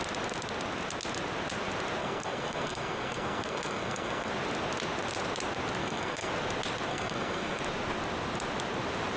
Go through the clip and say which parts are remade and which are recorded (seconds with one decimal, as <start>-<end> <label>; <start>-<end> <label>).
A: 0.0-2.0 recorded; 2.0-4.3 remade; 4.3-5.8 recorded; 5.8-6.3 remade; 6.3-6.9 recorded; 6.9-7.6 remade; 7.6-9.2 recorded